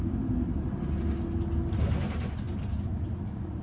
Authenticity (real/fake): real